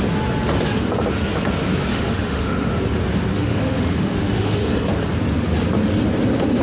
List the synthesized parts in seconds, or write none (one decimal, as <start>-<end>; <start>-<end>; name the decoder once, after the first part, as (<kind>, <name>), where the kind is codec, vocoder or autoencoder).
1.9-2.8 (autoencoder, DAC-VAE); 3.3-4.7